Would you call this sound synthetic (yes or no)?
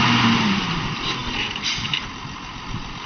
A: yes